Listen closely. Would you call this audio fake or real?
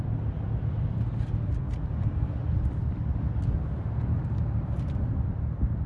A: real